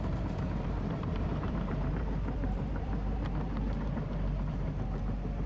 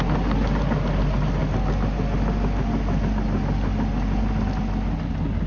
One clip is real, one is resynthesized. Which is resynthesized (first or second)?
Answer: first